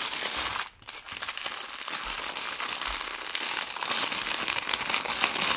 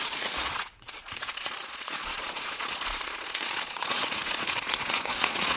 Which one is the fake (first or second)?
second